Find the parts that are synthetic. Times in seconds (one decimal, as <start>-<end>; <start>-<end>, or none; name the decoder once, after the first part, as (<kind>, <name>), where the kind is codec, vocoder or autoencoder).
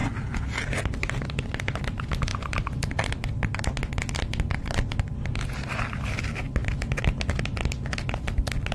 none